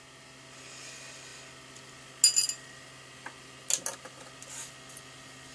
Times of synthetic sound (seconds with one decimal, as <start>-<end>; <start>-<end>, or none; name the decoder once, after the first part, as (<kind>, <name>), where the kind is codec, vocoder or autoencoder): none